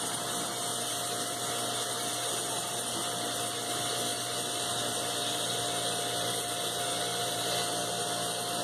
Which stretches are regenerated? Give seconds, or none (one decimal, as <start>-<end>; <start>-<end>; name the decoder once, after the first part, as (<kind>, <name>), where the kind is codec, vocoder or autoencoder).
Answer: none